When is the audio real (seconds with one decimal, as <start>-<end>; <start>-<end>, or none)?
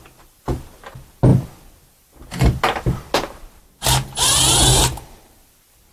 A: 0.0-5.9